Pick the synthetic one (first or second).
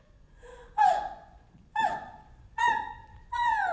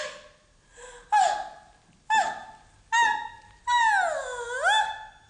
first